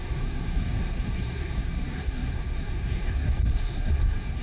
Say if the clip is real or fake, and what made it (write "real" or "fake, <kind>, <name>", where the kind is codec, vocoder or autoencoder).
fake, codec, SNAC